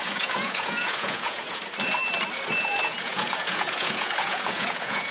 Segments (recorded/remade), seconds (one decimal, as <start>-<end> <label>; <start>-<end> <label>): 0.0-1.6 remade; 1.6-2.6 recorded; 2.6-5.1 remade